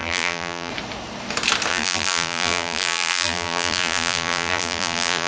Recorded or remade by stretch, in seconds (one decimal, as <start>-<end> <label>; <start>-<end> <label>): 0.0-0.7 remade; 0.7-1.7 recorded; 1.7-5.3 remade